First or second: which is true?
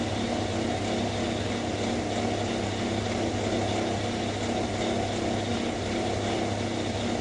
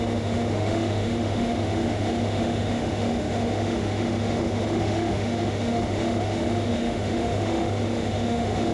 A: first